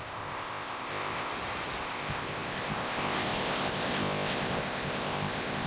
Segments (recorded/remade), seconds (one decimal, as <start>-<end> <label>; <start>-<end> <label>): 0.0-1.3 remade; 1.3-1.8 recorded; 1.8-5.7 remade